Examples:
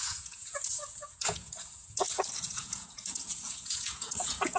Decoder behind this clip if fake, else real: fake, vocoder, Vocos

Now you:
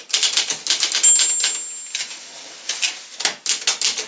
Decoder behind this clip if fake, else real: real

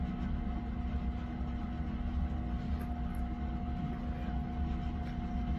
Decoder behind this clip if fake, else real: real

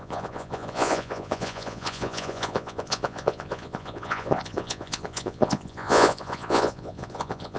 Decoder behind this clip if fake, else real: fake, vocoder, Vocos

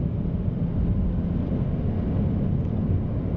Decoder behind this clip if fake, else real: real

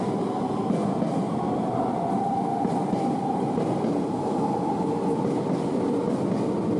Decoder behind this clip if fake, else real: real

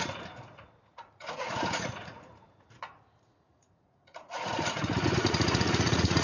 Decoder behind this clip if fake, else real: fake, vocoder, Vocos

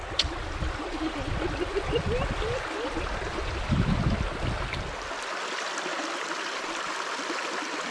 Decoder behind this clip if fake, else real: real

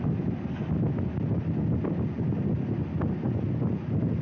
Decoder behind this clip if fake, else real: real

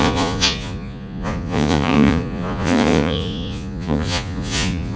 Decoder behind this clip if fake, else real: fake, vocoder, Vocos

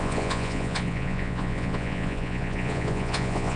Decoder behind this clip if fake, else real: fake, vocoder, Vocos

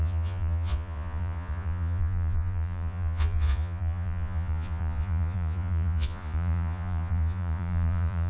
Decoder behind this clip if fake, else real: fake, vocoder, Vocos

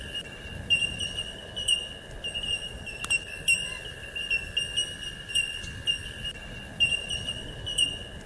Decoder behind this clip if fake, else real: real